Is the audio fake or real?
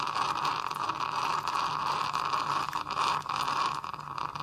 real